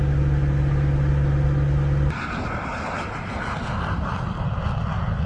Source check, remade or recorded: recorded